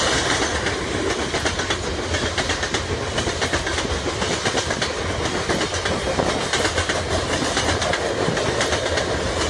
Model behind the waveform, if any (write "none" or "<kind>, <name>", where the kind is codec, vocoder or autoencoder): none